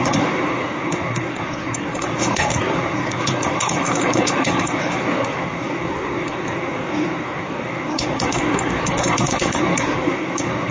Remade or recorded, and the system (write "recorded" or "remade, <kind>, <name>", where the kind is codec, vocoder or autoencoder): remade, codec, SNAC